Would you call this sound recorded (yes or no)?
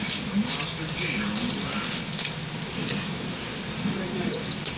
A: yes